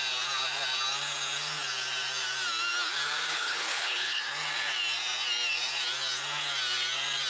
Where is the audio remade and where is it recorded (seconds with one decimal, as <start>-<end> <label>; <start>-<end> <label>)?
0.0-3.3 recorded; 3.3-4.2 remade; 4.2-7.3 recorded